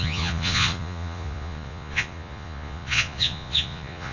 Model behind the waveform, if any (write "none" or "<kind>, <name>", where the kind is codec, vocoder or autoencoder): vocoder, Vocos